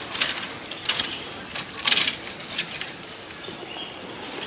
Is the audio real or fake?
real